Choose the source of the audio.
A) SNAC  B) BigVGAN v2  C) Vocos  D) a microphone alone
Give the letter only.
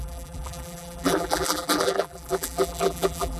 B